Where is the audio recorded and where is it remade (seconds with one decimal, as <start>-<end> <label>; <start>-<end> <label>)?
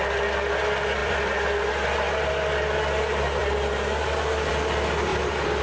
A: 0.0-1.0 recorded; 1.0-1.7 remade; 1.7-5.1 recorded; 5.1-5.6 remade